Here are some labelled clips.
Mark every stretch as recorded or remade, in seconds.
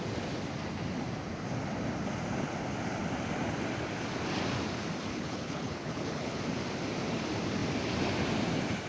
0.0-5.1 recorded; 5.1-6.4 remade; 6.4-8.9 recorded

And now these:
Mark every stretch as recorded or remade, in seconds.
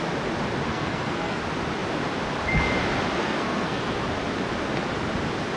0.0-0.7 recorded; 0.7-1.4 remade; 1.4-3.2 recorded; 3.2-3.8 remade; 3.8-5.6 recorded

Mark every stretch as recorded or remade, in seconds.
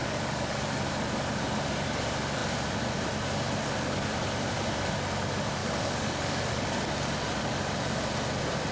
0.0-0.6 remade; 0.6-5.6 recorded; 5.6-6.6 remade; 6.6-8.7 recorded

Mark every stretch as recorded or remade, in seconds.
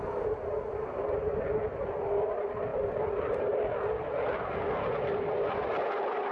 0.0-6.3 recorded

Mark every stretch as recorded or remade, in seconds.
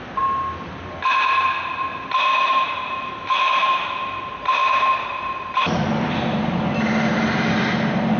0.0-2.3 recorded; 2.3-4.0 remade; 4.0-8.2 recorded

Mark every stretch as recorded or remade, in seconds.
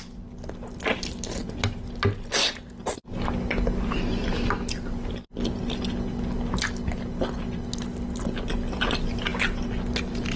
0.0-2.4 recorded; 2.4-3.2 remade; 3.2-10.4 recorded